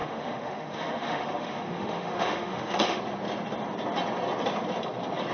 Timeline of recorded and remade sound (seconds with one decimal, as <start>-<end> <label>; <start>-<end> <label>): 0.0-3.0 remade; 3.0-5.3 recorded